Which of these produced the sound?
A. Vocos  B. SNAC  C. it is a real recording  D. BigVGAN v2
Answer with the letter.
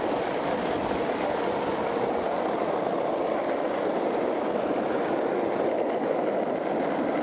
C